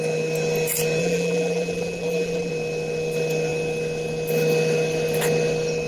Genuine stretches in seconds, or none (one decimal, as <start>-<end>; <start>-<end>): 0.0-1.0; 2.5-5.9